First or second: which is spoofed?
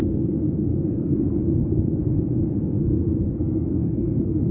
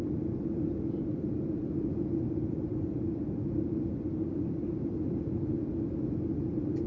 first